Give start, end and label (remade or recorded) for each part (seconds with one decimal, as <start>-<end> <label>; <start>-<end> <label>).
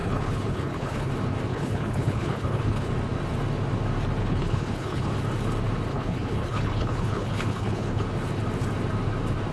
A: 0.0-1.1 remade; 1.1-1.5 recorded; 1.5-2.9 remade; 2.9-4.2 recorded; 4.2-5.1 remade; 5.1-5.9 recorded; 5.9-8.0 remade; 8.0-9.5 recorded